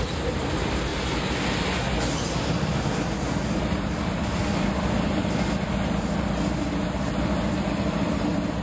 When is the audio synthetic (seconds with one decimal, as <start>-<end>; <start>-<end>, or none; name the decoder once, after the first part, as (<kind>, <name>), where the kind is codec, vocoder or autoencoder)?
none